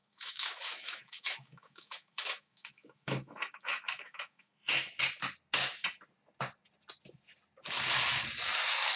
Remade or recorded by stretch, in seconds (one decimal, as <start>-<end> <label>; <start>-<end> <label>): 0.0-4.9 remade; 4.9-9.0 recorded